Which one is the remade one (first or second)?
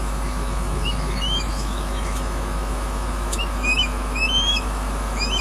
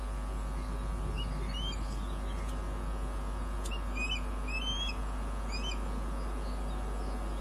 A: first